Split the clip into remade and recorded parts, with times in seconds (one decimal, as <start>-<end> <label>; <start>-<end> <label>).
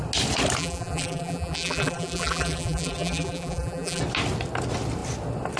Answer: 0.0-0.6 recorded; 0.6-4.0 remade; 4.0-5.6 recorded